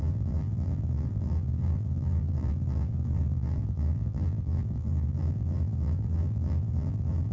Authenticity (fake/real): fake